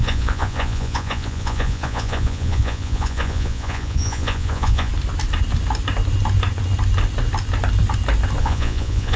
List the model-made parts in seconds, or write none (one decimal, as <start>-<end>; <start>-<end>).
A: 0.0-4.9; 8.4-9.2